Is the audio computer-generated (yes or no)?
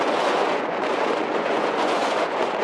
yes